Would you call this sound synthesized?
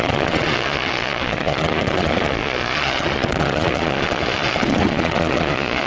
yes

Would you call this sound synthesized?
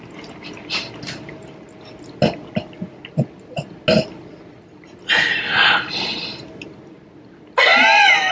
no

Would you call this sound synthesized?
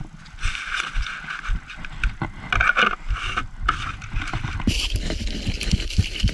no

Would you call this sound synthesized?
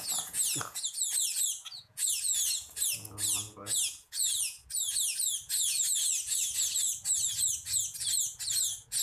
yes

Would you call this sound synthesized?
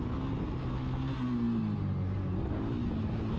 no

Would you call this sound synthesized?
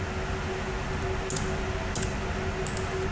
no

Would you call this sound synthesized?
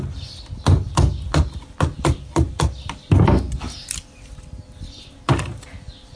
no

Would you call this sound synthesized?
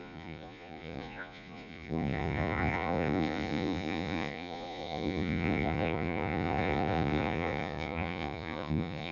yes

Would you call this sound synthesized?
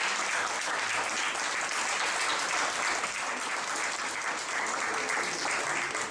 no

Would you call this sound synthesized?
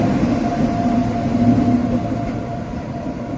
no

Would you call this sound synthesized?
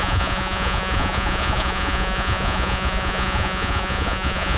yes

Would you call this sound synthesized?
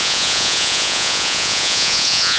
yes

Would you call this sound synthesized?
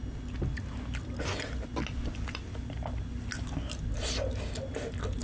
no